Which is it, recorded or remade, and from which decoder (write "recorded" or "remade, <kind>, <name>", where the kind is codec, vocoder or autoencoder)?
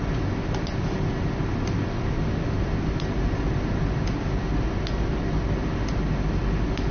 recorded